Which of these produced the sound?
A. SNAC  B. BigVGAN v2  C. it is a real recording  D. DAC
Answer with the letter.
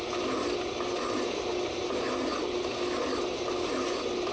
C